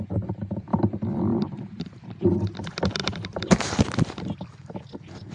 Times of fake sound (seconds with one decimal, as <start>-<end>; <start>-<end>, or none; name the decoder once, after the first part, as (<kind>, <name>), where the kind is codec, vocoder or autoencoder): 1.3-1.8 (vocoder, BigVGAN v2); 3.0-3.8